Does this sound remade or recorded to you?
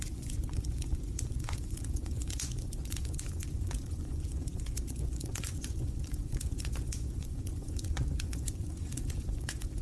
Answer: remade